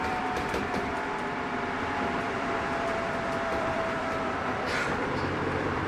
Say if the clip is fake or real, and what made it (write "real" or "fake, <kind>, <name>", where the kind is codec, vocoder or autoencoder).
fake, vocoder, BigVGAN v2